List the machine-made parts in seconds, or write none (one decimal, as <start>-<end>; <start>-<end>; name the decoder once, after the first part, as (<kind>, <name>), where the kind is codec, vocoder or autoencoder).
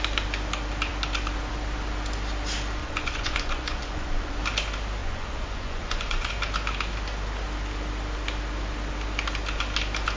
2.8-4.4 (vocoder, Vocos); 5.0-6.3